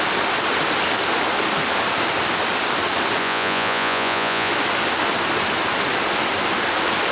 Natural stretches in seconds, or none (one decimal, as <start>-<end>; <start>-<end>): 0.0-3.2; 4.5-7.1